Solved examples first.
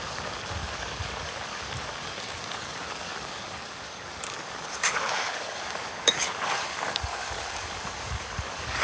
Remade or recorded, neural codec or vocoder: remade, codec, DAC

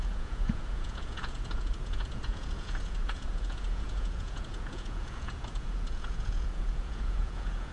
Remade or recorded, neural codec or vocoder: remade, vocoder, Vocos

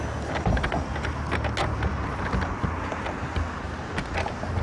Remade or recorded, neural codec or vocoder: recorded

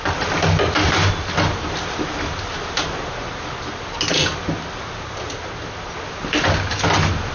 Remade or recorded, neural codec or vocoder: recorded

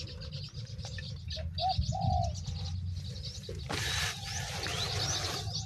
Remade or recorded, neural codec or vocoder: recorded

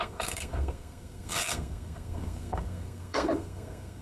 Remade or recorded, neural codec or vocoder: remade, codec, SNAC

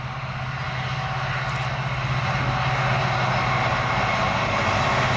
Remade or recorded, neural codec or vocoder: recorded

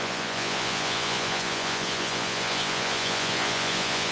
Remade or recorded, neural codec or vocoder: remade, vocoder, Vocos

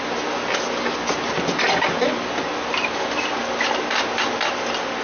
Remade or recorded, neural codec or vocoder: recorded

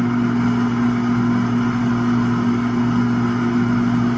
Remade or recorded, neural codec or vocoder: recorded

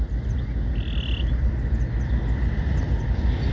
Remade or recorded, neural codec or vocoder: recorded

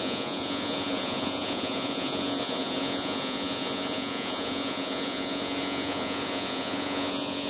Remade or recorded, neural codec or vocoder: remade, vocoder, Vocos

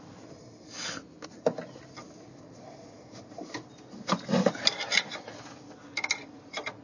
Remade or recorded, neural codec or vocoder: recorded